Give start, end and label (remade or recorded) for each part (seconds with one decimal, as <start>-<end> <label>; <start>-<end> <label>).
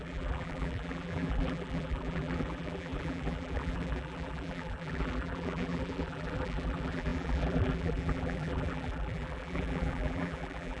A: 0.0-10.8 remade